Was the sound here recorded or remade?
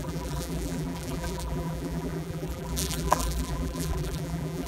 remade